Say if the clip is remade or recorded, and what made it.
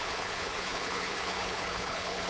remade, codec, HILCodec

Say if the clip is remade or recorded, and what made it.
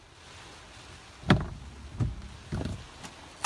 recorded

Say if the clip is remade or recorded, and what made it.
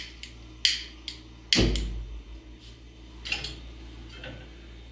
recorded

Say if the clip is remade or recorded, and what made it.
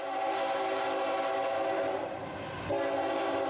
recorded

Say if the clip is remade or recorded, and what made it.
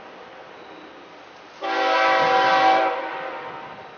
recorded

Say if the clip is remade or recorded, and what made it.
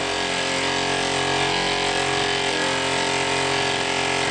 recorded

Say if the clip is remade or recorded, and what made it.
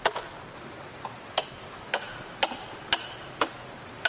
recorded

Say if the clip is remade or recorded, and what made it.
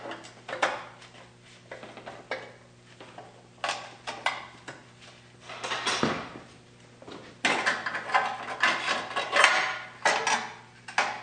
recorded